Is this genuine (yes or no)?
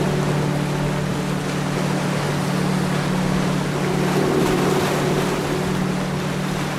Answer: yes